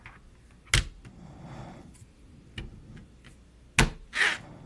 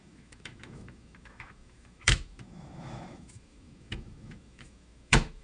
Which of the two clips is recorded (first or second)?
first